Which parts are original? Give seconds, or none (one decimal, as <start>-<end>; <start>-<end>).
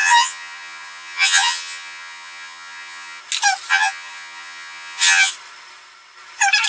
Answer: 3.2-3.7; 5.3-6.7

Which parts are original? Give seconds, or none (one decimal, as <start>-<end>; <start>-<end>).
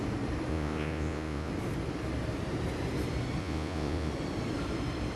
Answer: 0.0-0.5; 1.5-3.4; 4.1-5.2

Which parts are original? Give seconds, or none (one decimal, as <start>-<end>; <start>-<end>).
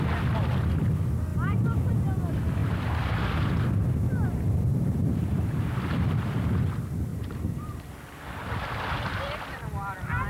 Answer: 0.0-2.6; 5.7-7.1; 7.7-10.3